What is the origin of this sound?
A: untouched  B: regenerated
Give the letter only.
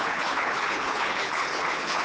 B